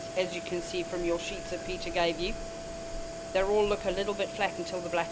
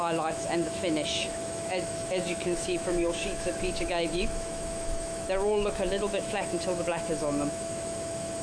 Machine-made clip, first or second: second